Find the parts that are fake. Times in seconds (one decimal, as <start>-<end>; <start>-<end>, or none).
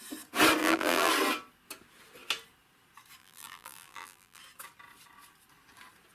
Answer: 0.6-1.1; 3.2-4.4